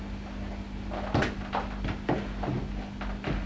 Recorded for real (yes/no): yes